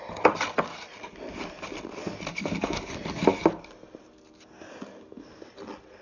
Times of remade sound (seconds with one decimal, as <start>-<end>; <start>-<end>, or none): 2.3-2.9